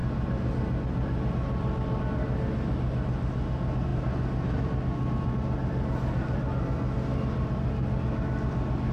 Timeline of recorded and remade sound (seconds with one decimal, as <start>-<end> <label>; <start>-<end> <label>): 0.0-8.9 recorded